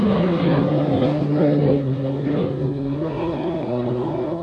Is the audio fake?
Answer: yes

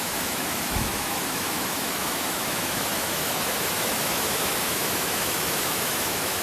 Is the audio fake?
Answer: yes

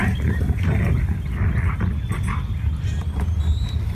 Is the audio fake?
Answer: no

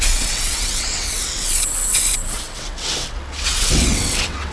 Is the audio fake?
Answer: yes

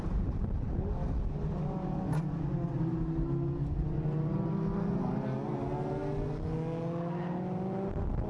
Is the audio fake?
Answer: no